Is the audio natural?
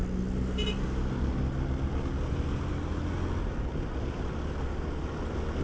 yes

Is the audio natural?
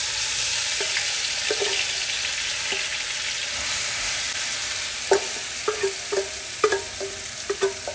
yes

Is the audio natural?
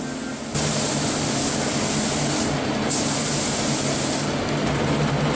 yes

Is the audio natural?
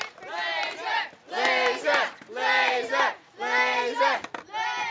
yes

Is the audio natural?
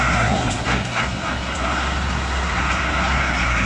no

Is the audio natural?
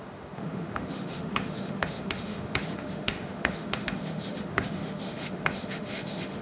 no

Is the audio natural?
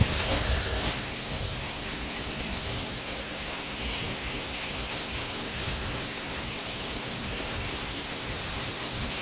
no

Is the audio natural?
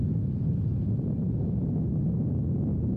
yes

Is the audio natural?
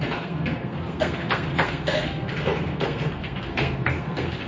no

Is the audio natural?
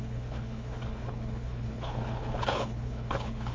no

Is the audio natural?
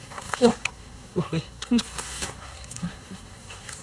no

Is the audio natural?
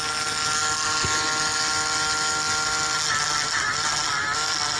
yes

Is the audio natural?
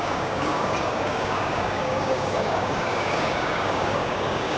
no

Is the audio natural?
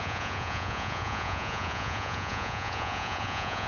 no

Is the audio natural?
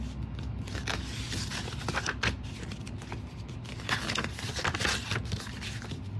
yes